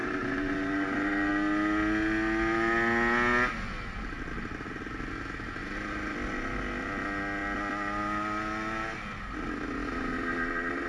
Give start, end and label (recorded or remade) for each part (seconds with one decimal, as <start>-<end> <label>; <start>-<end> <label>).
0.0-1.3 remade; 1.3-10.9 recorded